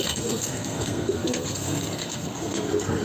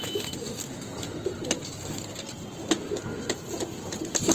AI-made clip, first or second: first